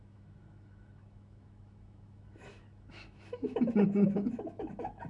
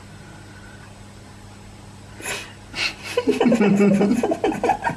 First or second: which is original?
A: second